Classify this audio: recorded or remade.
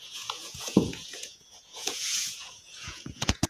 remade